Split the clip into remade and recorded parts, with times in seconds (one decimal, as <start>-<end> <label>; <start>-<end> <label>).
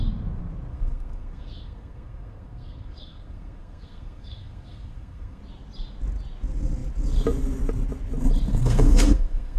0.0-0.7 recorded; 0.7-5.4 remade; 5.4-8.5 recorded; 8.5-9.6 remade